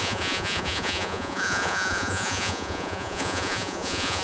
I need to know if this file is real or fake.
fake